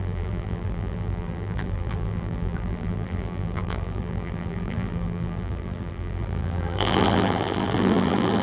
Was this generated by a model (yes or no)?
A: yes